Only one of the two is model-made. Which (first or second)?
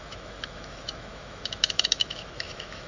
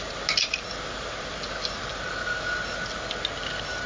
first